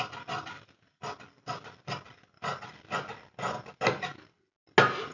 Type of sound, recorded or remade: recorded